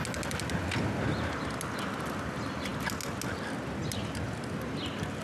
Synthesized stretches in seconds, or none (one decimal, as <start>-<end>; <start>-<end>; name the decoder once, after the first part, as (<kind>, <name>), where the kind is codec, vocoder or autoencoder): none